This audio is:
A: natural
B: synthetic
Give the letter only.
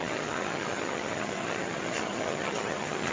B